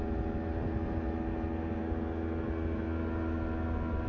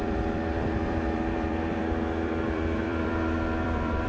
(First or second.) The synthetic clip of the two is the second